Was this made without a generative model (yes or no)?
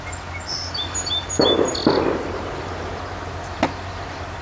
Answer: yes